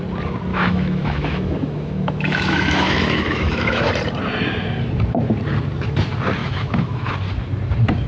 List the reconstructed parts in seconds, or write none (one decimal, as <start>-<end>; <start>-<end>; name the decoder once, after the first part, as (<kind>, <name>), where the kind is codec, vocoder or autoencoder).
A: 0.5-3.9 (autoencoder, DAC-VAE); 6.4-7.1